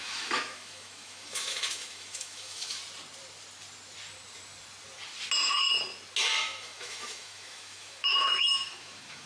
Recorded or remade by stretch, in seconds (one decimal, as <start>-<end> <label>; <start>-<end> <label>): 0.0-2.8 remade; 2.8-6.4 recorded; 6.4-9.3 remade